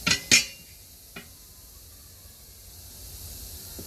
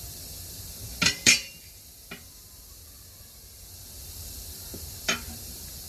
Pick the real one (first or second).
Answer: first